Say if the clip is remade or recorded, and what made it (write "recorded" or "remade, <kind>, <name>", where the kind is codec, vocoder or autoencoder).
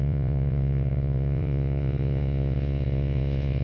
remade, vocoder, Vocos